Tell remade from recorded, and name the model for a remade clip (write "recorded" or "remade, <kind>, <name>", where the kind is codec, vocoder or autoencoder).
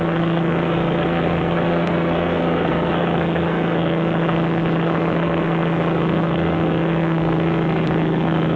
remade, codec, SNAC